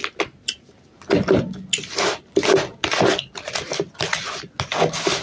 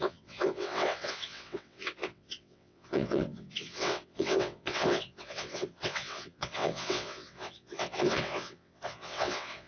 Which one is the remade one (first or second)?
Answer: second